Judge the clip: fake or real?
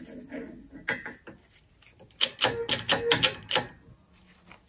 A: real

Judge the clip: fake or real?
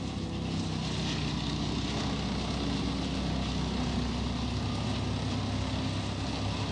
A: real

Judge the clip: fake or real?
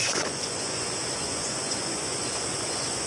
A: fake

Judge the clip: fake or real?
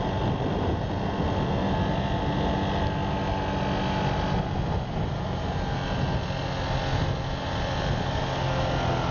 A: real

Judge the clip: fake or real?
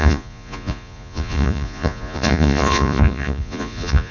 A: fake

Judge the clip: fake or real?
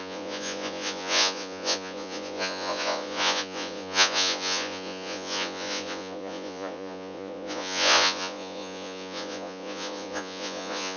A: fake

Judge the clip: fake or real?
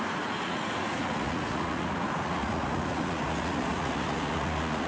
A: fake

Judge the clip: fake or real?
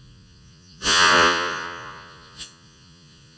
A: fake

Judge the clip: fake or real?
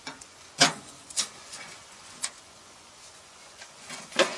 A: fake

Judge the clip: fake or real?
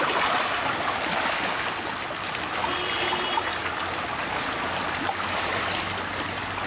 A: real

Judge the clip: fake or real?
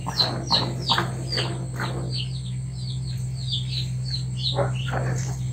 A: real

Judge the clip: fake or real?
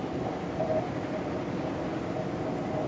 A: real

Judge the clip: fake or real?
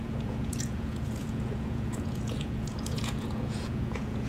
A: fake